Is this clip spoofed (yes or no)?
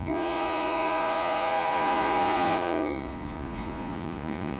yes